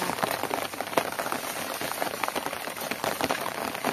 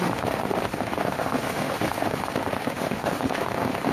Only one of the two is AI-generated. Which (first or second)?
second